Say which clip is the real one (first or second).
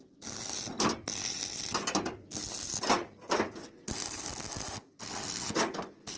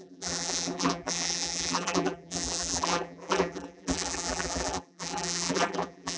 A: first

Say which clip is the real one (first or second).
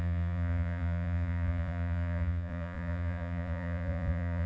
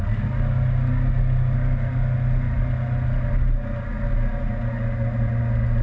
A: second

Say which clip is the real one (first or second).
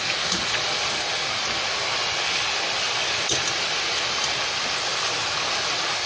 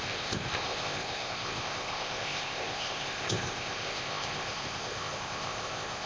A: first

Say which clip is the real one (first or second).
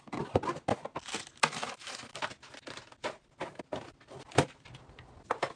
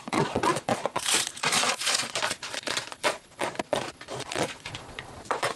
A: first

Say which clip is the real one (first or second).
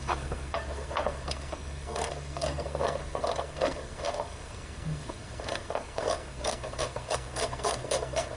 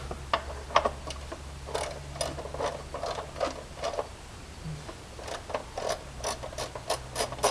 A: second